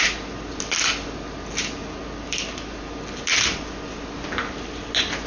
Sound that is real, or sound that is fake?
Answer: real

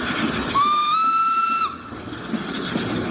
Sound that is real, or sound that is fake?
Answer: real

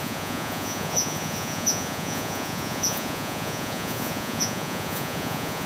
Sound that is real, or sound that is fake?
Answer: fake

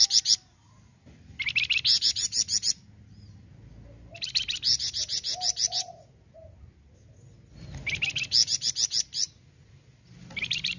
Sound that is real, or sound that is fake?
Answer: real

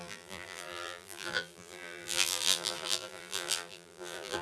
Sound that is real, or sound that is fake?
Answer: fake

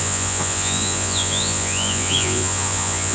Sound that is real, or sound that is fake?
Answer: fake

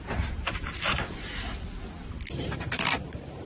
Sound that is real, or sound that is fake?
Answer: fake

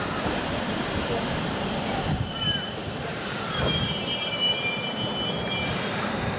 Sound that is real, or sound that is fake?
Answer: fake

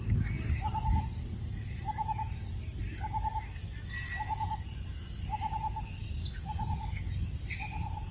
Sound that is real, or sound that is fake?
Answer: real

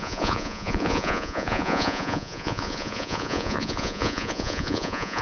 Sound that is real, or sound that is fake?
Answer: fake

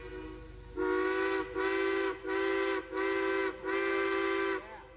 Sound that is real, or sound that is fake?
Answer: real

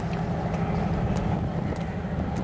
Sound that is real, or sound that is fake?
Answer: real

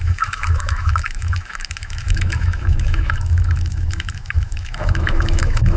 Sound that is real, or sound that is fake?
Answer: fake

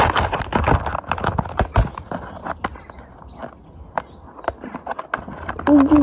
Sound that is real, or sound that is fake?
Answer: real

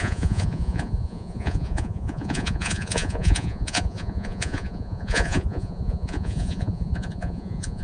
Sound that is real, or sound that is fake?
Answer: fake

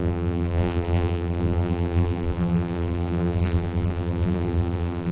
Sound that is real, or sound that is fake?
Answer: fake